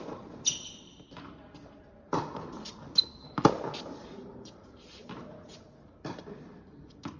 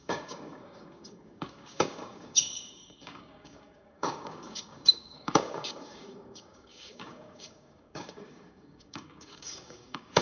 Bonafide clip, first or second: first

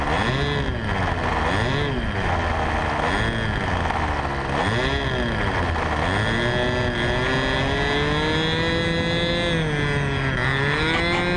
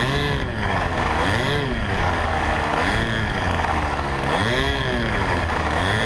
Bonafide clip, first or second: first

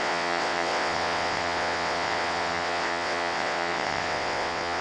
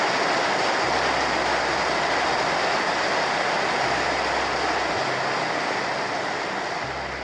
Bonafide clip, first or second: second